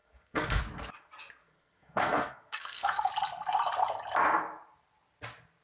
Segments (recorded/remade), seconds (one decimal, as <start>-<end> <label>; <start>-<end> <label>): 0.0-0.6 remade; 0.6-1.4 recorded; 1.4-3.1 remade; 3.1-5.6 recorded